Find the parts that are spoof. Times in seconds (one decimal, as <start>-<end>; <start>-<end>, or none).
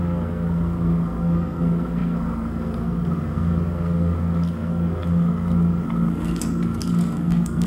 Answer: 0.0-7.7